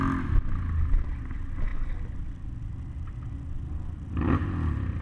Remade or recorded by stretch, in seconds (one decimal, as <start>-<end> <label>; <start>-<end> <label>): 0.0-5.0 recorded